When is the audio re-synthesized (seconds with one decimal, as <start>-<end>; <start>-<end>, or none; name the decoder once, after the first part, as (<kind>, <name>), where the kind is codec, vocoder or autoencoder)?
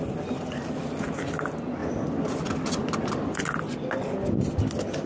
none